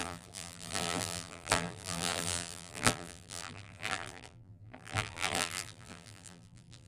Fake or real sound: fake